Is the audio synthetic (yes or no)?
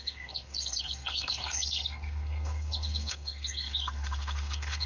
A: yes